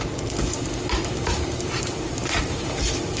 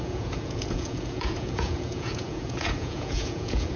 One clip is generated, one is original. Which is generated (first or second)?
second